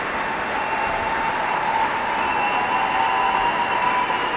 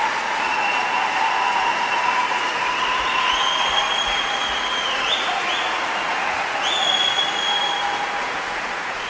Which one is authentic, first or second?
first